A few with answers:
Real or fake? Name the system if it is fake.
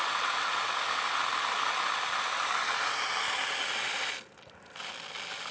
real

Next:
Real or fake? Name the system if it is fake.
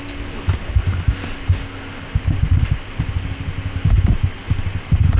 real